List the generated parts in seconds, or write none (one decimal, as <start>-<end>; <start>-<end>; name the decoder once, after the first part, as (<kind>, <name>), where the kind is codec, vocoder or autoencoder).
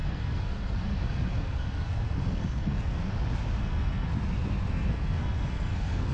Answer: 0.0-3.0 (codec, SNAC); 3.6-4.1; 4.7-6.1